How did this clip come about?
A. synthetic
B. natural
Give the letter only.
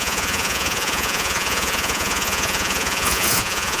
A